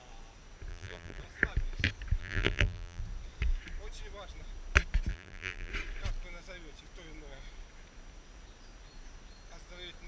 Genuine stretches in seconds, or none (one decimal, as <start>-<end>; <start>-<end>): 0.0-0.7; 1.2-2.2; 3.0-5.1; 5.7-10.1